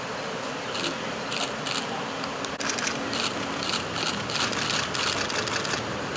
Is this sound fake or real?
real